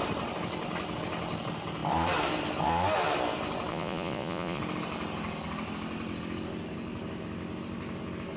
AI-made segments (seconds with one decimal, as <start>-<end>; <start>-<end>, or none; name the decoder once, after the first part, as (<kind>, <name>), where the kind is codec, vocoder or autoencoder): 3.7-4.6 (vocoder, Vocos)